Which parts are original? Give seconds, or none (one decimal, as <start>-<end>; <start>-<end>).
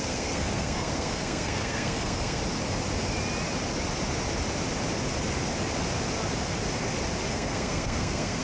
2.4-7.3